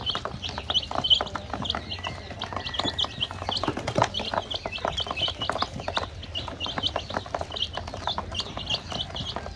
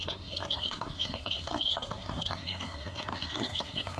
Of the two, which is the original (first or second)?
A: first